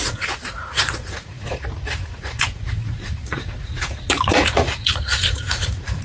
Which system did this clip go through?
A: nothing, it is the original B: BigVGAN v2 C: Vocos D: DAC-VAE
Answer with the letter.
C